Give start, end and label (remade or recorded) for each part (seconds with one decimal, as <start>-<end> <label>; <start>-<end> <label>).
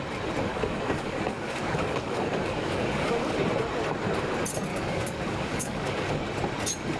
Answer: 0.0-0.5 recorded; 0.5-3.3 remade; 3.3-4.7 recorded; 4.7-6.1 remade; 6.1-7.0 recorded